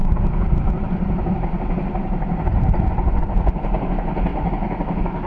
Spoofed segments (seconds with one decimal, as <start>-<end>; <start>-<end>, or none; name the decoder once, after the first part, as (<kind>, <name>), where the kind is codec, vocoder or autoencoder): 0.0-3.2 (vocoder, BigVGAN v2)